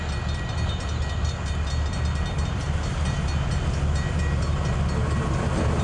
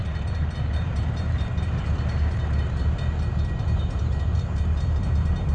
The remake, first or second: second